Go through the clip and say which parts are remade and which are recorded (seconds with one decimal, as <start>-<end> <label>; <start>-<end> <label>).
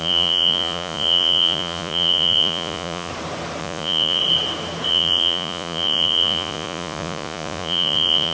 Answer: 0.0-3.1 remade; 3.1-3.6 recorded; 3.6-4.2 remade; 4.2-4.9 recorded; 4.9-8.3 remade